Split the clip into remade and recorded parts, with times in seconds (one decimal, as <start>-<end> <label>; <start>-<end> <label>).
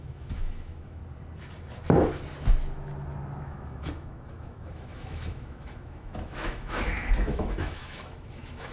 0.0-1.0 remade; 1.0-3.4 recorded; 3.4-8.7 remade